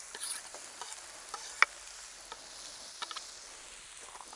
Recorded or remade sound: recorded